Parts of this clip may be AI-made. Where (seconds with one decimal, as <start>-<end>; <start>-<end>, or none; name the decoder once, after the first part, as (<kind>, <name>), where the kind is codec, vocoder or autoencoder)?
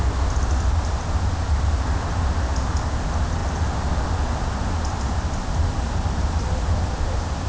none